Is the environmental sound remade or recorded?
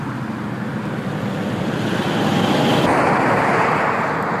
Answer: remade